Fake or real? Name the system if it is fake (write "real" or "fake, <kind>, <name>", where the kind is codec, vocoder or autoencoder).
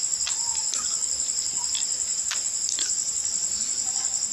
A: real